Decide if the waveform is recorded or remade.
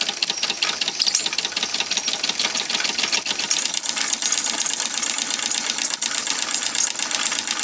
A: recorded